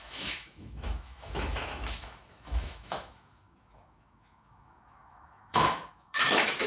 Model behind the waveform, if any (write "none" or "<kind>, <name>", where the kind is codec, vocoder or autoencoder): autoencoder, DAC-VAE